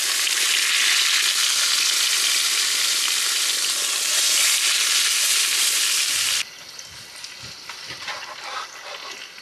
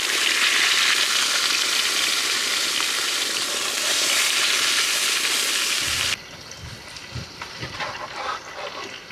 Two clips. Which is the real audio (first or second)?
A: first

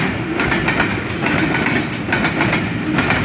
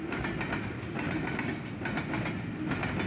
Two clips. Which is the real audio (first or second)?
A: second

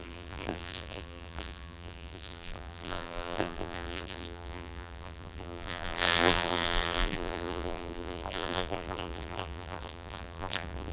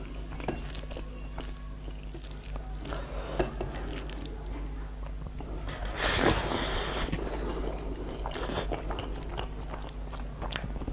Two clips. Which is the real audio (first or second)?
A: second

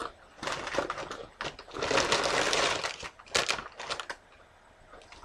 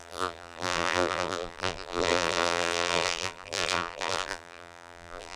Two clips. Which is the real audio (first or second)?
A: first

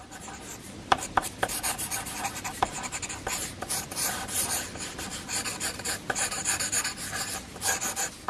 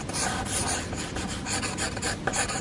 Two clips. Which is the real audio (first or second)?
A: second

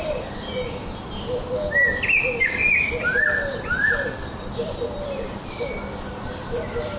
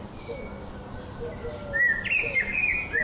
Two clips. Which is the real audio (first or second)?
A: second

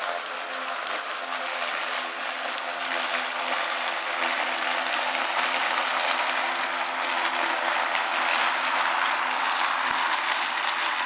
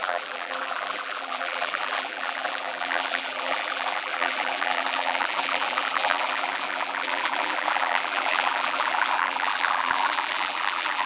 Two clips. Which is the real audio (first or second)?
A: first